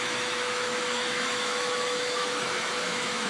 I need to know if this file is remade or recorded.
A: remade